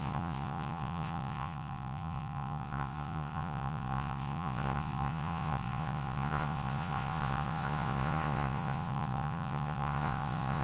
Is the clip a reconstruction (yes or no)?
yes